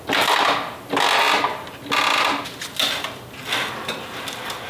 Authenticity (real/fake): real